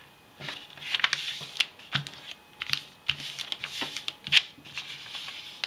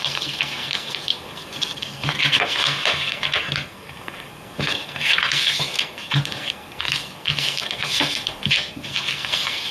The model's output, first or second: second